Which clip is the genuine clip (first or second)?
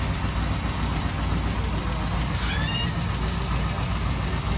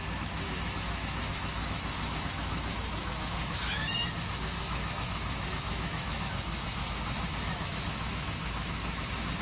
first